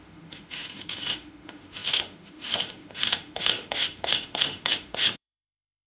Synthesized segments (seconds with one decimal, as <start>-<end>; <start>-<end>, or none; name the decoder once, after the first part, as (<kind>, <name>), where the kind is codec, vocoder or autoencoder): 0.0-5.9 (autoencoder, DAC-VAE)

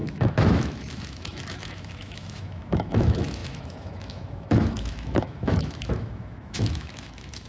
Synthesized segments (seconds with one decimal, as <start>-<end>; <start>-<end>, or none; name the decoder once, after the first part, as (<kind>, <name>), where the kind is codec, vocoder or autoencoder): 0.0-7.5 (autoencoder, DAC-VAE)

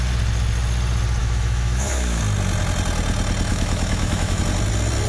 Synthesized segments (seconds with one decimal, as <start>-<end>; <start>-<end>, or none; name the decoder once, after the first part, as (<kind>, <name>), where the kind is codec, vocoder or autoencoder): 1.2-2.2 (autoencoder, DAC-VAE); 3.5-4.4

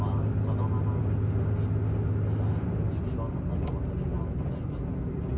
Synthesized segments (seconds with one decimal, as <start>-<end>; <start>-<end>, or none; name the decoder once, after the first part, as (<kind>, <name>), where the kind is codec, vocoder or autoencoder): none

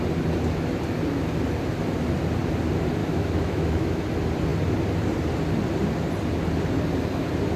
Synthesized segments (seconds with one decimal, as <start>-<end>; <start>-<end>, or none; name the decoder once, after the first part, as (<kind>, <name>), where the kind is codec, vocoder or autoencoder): 3.0-4.0 (autoencoder, DAC-VAE)

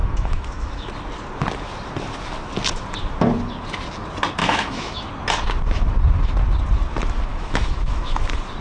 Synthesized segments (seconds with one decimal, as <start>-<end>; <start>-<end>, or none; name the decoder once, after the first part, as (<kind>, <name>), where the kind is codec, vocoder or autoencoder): 0.0-0.9 (autoencoder, DAC-VAE); 4.4-5.1; 7.3-8.2